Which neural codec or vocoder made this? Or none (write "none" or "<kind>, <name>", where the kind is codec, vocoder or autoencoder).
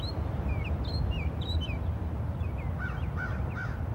none